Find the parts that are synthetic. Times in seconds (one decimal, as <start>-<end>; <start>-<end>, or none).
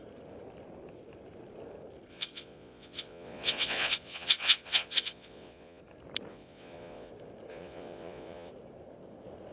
2.1-5.8; 6.3-7.1; 7.5-8.5